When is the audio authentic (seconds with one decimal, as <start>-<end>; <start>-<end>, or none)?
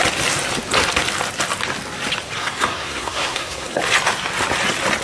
0.0-2.4; 3.8-5.0